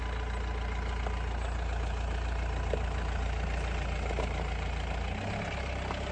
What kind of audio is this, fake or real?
real